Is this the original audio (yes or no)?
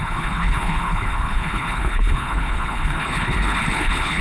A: no